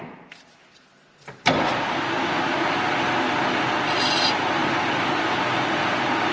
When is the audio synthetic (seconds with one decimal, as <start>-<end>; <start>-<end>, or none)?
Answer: 1.7-2.9